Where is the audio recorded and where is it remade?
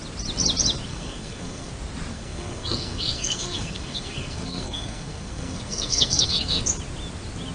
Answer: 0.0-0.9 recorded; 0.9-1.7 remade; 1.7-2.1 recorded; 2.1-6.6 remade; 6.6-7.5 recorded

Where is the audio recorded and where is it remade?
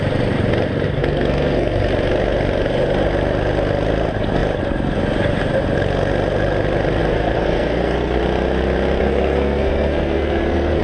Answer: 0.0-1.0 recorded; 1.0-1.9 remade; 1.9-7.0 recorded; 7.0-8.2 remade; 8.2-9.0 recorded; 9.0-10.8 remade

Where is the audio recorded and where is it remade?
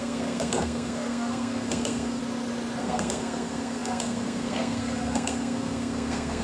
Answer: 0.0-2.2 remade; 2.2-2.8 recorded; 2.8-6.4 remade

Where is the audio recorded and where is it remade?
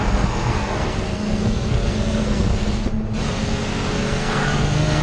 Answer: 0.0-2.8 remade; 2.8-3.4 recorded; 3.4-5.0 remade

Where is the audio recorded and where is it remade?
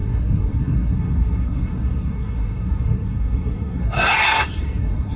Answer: 0.0-5.2 remade